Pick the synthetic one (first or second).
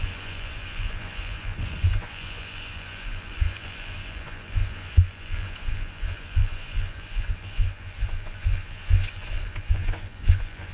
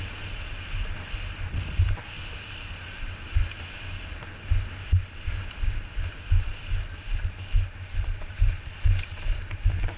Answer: first